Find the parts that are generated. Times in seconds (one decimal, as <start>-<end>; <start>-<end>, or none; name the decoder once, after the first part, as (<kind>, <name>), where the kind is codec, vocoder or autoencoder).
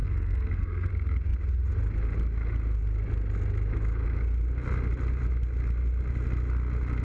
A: 0.0-0.9 (codec, SNAC)